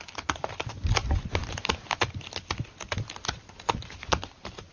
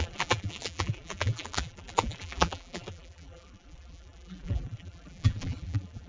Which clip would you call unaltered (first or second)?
first